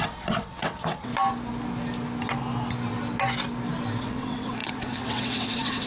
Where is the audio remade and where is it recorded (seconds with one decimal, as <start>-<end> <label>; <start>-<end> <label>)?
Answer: 0.0-1.1 remade; 1.1-4.0 recorded; 4.0-5.9 remade

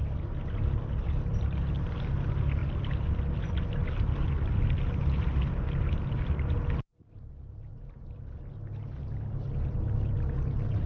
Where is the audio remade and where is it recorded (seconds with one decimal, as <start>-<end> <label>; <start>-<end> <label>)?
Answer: 0.0-10.9 recorded

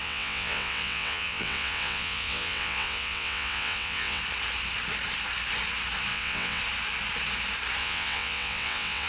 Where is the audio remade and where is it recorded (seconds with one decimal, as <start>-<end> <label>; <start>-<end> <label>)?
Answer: 0.0-4.2 remade; 4.2-6.1 recorded; 6.1-6.6 remade; 6.6-7.8 recorded; 7.8-9.1 remade

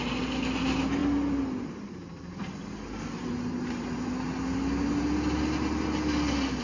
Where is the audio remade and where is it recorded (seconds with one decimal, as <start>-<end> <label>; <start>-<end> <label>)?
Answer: 0.0-6.6 recorded

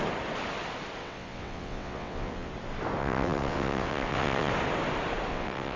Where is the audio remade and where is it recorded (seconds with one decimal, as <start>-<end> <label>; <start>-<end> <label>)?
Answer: 0.0-1.0 recorded; 1.0-2.5 remade; 2.5-3.0 recorded; 3.0-4.5 remade; 4.5-5.3 recorded; 5.3-5.8 remade

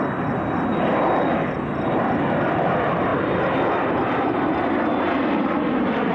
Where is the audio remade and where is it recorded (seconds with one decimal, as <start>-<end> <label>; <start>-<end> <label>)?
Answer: 0.0-6.1 recorded